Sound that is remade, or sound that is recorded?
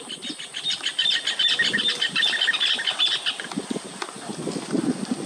recorded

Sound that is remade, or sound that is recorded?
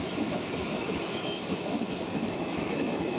remade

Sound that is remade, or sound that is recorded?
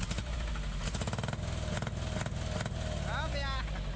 recorded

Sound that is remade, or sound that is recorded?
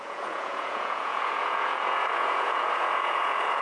remade